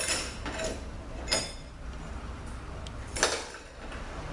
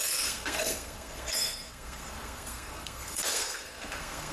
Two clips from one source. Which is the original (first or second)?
first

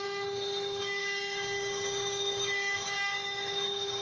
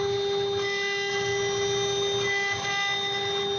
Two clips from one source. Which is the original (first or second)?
second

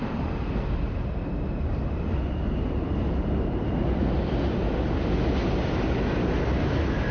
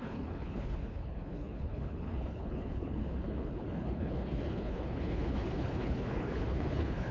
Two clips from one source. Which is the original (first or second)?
first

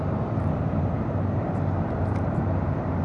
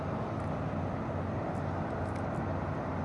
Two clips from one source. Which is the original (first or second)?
second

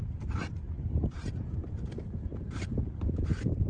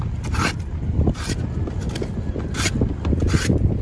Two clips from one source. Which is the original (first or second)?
second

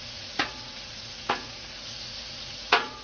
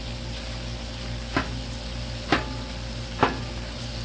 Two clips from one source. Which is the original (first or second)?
second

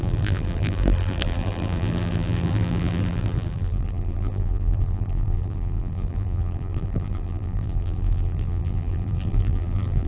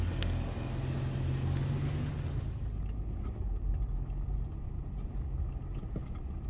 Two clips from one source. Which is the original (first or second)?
second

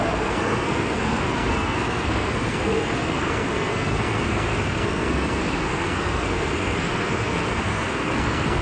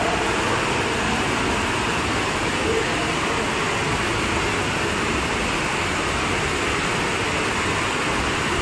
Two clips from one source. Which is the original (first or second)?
second